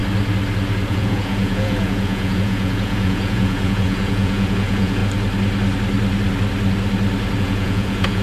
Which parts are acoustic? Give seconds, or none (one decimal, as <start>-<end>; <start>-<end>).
0.0-0.9; 5.0-7.4